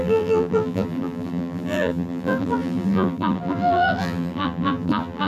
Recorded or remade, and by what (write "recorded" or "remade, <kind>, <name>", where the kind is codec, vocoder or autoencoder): remade, vocoder, BigVGAN v2